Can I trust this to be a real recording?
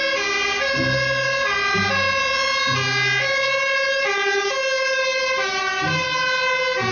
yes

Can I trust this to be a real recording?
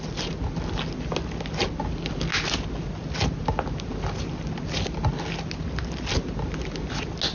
yes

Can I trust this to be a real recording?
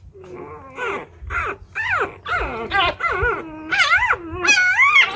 yes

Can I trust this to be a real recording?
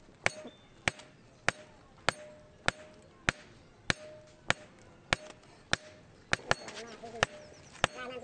yes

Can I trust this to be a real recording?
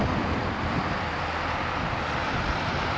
yes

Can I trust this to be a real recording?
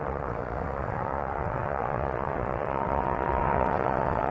no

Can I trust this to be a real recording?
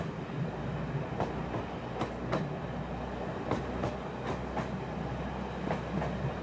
yes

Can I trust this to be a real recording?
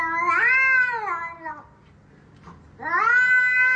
yes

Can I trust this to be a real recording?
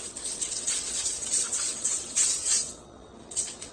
no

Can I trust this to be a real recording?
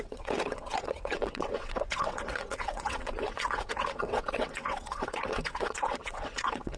no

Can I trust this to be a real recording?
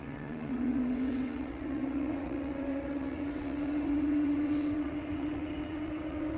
no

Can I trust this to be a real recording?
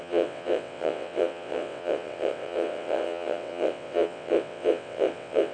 no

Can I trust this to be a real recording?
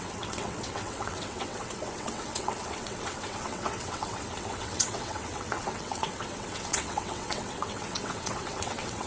no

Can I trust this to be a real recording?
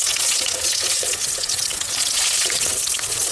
no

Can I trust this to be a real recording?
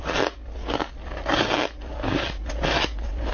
yes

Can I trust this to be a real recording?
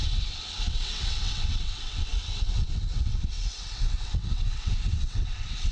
no